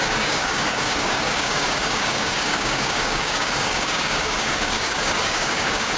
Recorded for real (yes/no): no